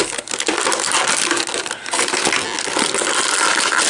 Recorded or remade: recorded